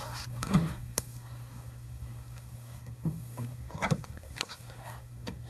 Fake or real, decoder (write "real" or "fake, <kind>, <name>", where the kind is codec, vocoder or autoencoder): fake, codec, SNAC